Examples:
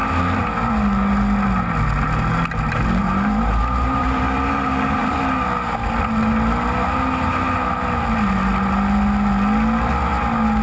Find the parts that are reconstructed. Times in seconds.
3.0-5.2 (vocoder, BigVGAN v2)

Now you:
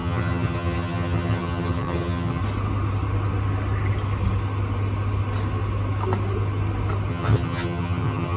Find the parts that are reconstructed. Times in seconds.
0.0-2.4 (vocoder, HiFi-GAN); 7.1-8.4

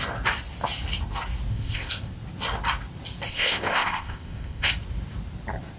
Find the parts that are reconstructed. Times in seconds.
1.5-2.1 (codec, ZipCodec); 3.3-4.7

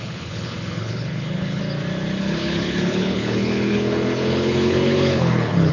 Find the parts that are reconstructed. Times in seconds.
0.0-1.6 (codec, HILCodec); 2.2-5.7

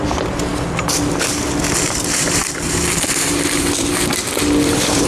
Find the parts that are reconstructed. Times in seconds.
0.0-0.5 (vocoder, BigVGAN v2); 1.7-5.1